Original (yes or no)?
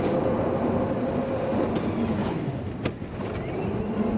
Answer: yes